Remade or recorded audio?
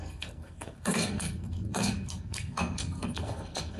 remade